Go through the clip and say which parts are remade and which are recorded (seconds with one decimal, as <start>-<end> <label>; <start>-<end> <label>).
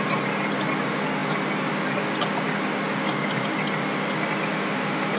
0.0-5.2 recorded